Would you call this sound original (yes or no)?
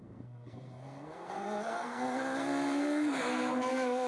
no